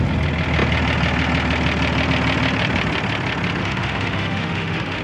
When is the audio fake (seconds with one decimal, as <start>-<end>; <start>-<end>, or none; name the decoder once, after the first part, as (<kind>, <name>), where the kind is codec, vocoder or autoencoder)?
3.6-5.0 (autoencoder, DAC-VAE)